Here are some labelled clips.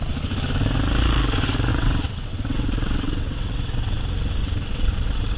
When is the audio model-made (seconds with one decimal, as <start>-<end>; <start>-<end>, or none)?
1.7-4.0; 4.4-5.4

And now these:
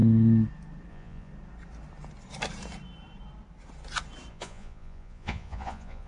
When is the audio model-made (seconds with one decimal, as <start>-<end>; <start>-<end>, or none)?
0.9-1.3; 4.3-6.1

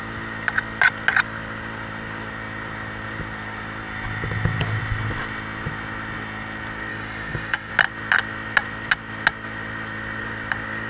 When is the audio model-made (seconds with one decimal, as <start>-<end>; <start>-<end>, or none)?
6.9-7.7